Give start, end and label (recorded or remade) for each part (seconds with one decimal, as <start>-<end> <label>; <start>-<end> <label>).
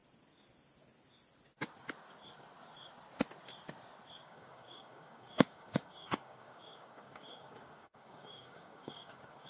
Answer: 0.0-4.2 recorded; 4.2-9.5 remade